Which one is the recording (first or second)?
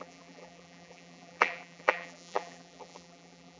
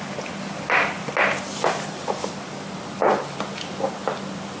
second